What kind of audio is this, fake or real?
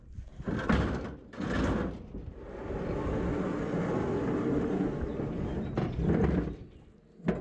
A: real